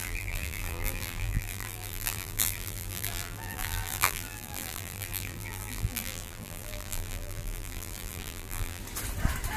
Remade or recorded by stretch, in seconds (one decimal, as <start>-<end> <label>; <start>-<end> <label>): 0.0-8.8 remade; 8.8-9.6 recorded

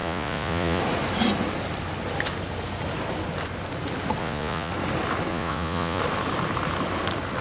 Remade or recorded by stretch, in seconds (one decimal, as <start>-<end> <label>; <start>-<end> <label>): 0.0-0.8 remade; 0.8-4.2 recorded; 4.2-4.7 remade; 4.7-5.3 recorded; 5.3-6.0 remade; 6.0-7.4 recorded

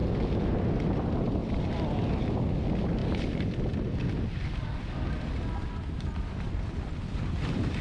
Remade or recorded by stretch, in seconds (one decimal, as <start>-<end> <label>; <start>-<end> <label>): 0.0-1.4 recorded; 1.4-2.2 remade; 2.2-3.0 recorded; 3.0-4.2 remade; 4.2-7.8 recorded

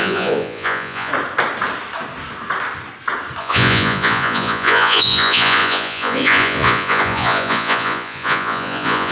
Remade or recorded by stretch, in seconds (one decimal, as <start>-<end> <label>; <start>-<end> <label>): 0.0-1.1 remade; 1.1-3.4 recorded; 3.4-9.1 remade

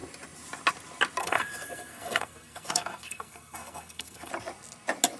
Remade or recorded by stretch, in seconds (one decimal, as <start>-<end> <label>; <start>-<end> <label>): 0.0-1.2 recorded; 1.2-4.3 remade; 4.3-5.2 recorded

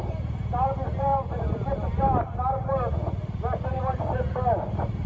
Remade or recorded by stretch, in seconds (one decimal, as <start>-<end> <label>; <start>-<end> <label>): 0.0-5.1 recorded